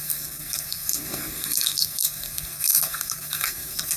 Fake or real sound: fake